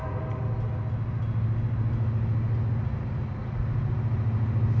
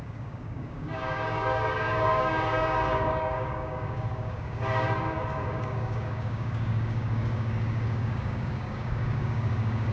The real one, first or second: first